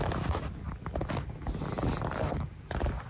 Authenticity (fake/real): real